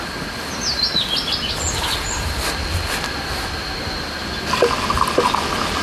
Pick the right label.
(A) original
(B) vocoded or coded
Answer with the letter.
A